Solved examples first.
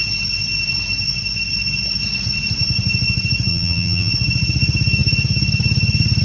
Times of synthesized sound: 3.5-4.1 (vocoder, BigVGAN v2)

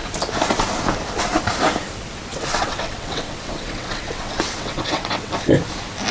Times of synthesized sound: 2.3-5.3 (vocoder, WaveNeXt)

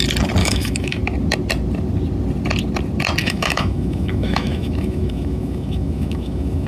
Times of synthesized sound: 0.4-1.0 (autoencoder, DAC-VAE); 3.2-6.7

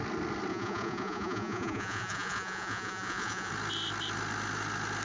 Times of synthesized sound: 0.5-3.5 (vocoder, Vocos)